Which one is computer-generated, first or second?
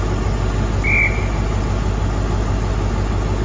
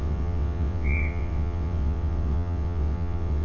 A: second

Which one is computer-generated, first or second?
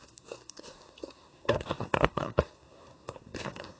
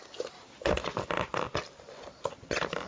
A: first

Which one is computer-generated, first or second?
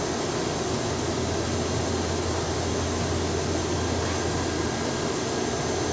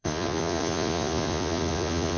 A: second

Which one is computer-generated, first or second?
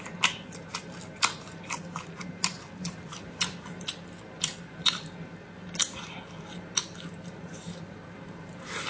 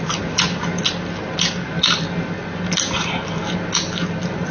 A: first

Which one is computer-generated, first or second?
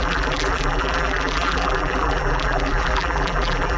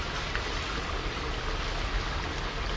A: first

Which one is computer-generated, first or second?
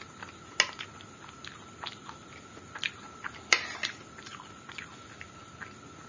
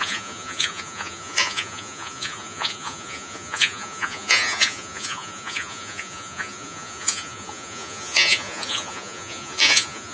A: second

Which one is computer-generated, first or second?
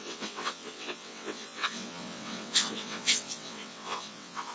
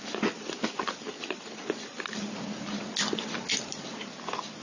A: first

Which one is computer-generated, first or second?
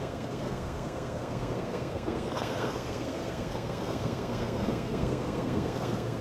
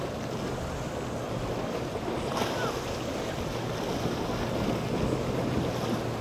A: first